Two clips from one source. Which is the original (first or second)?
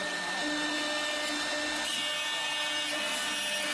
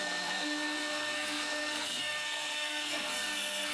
first